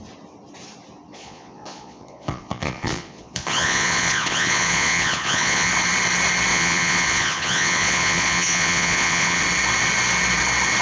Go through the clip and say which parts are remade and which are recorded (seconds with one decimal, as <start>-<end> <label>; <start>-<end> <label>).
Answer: 0.0-1.1 recorded; 1.1-5.7 remade; 5.7-6.5 recorded; 6.5-9.4 remade; 9.4-10.8 recorded